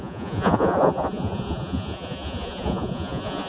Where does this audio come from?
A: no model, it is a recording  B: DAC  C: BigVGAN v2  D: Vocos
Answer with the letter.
D